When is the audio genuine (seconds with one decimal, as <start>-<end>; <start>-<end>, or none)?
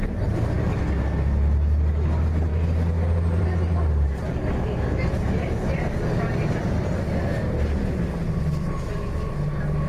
0.0-9.9